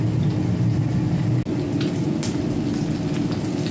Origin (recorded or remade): recorded